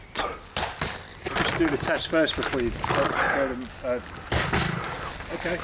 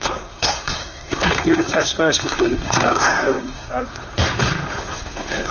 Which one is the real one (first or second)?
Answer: first